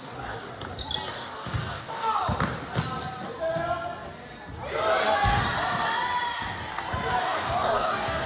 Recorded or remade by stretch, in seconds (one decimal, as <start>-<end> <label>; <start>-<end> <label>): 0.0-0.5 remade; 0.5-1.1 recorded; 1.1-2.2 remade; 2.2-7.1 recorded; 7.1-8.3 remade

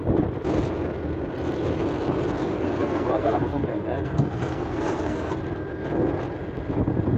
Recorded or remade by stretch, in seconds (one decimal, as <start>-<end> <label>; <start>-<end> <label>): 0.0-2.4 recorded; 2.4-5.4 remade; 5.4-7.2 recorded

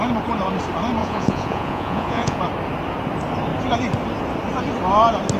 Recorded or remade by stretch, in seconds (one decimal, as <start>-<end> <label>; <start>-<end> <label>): 0.0-1.0 recorded; 1.0-2.4 remade; 2.4-5.4 recorded